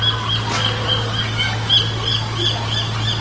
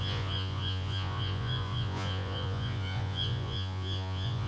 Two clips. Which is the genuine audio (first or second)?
first